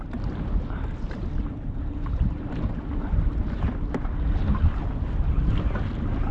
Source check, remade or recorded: recorded